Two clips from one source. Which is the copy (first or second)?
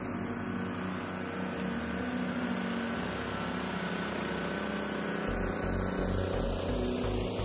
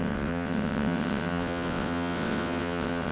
second